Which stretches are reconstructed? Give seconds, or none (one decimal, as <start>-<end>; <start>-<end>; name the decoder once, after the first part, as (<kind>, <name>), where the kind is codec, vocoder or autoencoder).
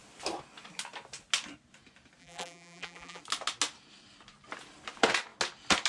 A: 2.2-3.2 (vocoder, BigVGAN v2)